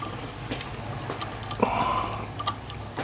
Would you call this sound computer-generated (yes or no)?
no